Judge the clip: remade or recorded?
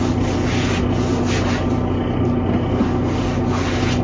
recorded